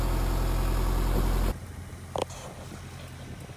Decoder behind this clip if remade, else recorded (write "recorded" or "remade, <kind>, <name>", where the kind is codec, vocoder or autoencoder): recorded